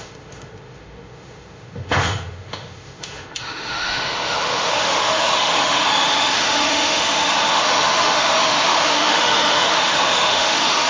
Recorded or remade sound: remade